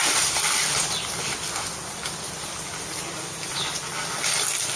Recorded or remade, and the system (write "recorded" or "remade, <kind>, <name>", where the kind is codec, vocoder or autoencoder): recorded